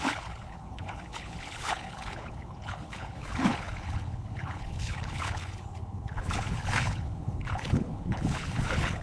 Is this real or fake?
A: fake